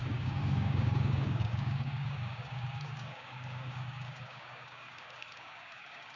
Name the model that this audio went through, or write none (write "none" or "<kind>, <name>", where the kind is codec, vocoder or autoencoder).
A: codec, DAC